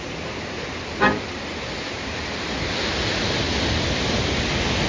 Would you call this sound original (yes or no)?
yes